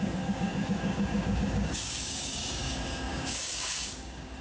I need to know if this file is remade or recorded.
remade